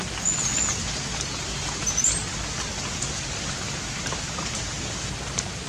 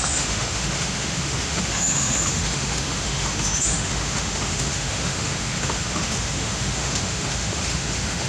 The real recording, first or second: first